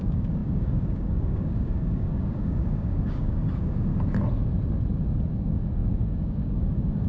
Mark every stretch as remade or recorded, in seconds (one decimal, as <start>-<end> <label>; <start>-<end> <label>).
0.0-3.9 remade; 3.9-5.3 recorded; 5.3-7.1 remade